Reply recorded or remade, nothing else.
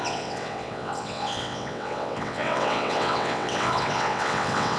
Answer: remade